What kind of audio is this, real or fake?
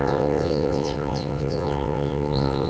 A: fake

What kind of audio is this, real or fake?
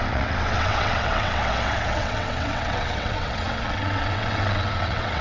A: fake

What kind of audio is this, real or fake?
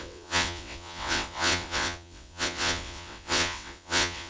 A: fake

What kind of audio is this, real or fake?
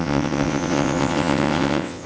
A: fake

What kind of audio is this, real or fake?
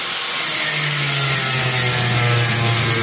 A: real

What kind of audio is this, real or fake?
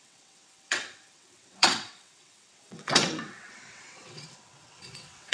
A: fake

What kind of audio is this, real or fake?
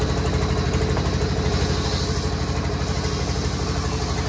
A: real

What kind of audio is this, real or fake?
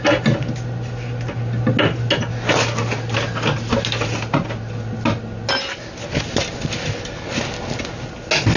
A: real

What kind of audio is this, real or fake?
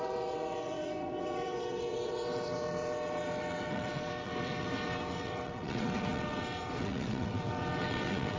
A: fake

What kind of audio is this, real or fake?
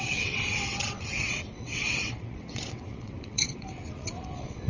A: fake